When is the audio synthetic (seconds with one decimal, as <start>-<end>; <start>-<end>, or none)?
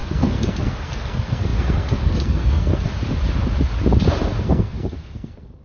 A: 0.0-2.9; 4.4-5.6